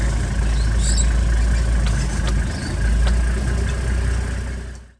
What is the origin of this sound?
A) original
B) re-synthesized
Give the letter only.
A